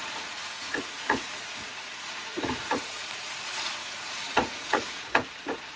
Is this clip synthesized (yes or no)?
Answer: yes